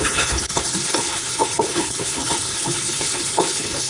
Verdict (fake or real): fake